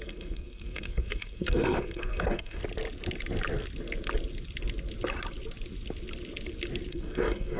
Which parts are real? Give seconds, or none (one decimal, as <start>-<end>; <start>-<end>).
2.6-6.9